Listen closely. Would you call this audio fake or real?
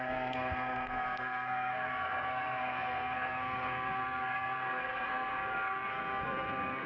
fake